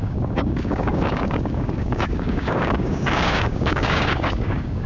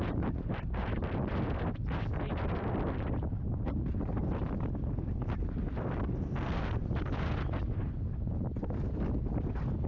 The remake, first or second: first